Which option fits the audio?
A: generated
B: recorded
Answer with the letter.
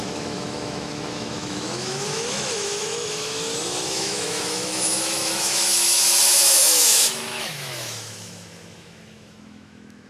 A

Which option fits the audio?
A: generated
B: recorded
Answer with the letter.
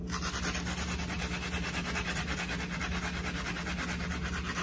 B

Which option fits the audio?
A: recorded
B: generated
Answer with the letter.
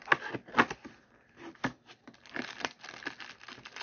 A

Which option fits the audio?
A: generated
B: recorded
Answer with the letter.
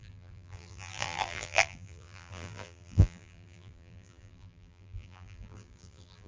A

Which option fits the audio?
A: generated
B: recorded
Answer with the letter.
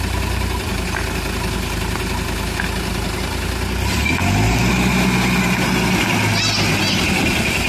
B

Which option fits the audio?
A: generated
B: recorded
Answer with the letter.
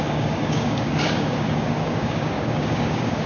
A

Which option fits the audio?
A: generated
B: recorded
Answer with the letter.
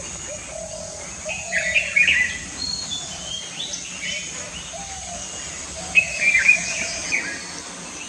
B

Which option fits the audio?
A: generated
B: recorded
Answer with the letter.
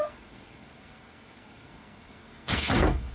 A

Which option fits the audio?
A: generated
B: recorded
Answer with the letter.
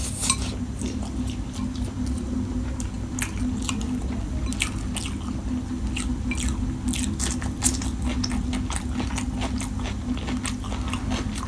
B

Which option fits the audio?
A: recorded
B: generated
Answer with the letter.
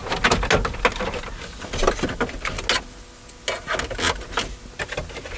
A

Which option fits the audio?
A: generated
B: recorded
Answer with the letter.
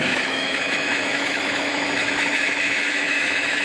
A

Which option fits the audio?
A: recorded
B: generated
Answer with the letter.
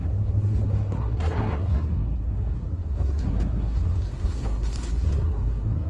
B